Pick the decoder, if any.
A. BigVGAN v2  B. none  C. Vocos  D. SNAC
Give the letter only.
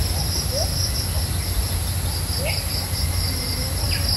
B